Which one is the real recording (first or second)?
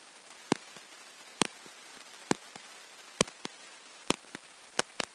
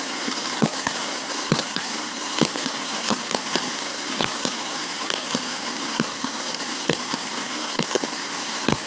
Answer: first